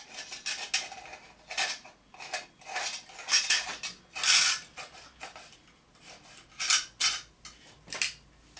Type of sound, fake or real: real